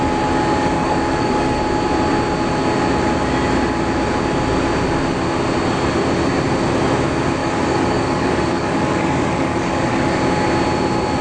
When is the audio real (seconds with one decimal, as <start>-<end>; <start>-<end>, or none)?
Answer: 0.0-0.6; 1.6-7.4; 10.2-11.2